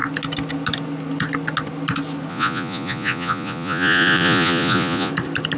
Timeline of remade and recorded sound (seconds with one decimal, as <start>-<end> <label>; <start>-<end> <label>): 0.0-2.3 recorded; 2.3-5.1 remade; 5.1-5.6 recorded